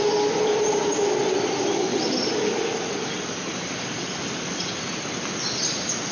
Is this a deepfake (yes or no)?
no